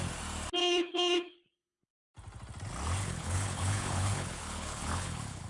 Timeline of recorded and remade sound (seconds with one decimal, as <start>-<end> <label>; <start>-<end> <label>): 0.0-0.6 recorded; 0.6-2.0 remade; 2.0-3.0 recorded; 3.0-5.5 remade